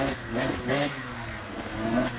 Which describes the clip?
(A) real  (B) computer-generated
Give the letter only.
B